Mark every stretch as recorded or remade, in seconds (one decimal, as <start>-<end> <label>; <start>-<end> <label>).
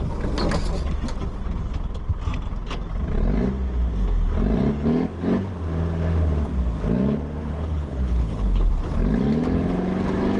0.0-7.4 recorded; 7.4-8.7 remade; 8.7-10.4 recorded